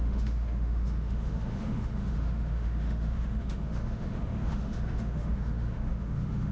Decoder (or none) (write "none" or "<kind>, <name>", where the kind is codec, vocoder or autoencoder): autoencoder, DAC-VAE